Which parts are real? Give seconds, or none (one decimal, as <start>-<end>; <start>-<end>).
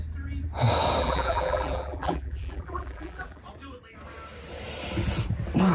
0.0-1.0; 3.4-5.7